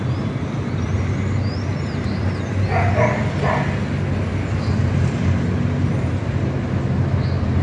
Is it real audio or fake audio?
real